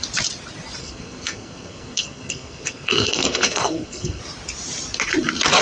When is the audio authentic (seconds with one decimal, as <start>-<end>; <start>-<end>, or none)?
0.0-0.8; 4.2-5.6

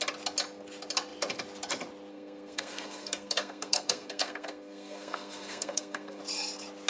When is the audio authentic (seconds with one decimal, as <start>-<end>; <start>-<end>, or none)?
0.0-2.1; 6.2-6.9

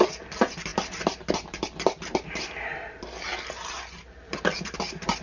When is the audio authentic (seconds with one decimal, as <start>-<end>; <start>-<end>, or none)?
0.0-5.2

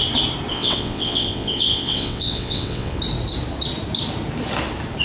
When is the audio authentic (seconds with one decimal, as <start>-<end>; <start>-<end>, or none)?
0.0-0.5; 3.0-5.0

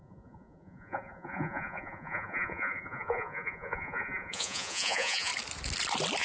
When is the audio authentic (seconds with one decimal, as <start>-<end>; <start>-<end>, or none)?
5.3-6.2

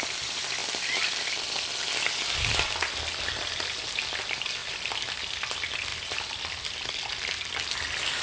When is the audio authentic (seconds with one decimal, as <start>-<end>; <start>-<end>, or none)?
0.0-8.2